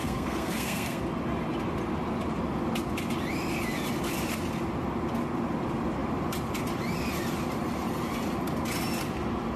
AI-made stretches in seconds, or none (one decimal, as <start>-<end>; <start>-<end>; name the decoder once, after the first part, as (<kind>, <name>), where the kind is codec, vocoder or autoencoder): 0.0-1.0 (codec, SNAC)